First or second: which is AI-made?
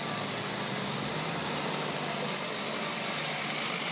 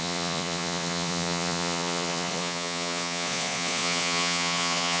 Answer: second